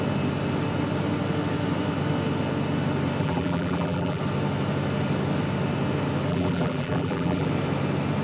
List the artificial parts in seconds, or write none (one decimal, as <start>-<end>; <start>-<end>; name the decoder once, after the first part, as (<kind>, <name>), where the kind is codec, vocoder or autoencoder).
3.2-4.2 (vocoder, BigVGAN v2); 6.3-7.5